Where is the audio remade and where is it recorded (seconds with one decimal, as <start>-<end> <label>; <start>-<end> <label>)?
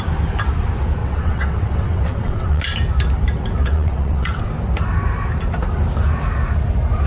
0.0-1.0 recorded; 1.0-2.6 remade; 2.6-3.6 recorded; 3.6-4.5 remade; 4.5-7.1 recorded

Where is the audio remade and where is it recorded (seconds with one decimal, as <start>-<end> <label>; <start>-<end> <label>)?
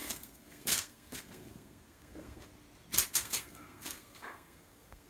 0.0-2.5 remade; 2.5-3.1 recorded; 3.1-5.1 remade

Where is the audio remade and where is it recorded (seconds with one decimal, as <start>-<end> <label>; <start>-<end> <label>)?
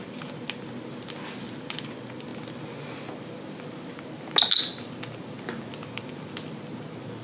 0.0-7.2 recorded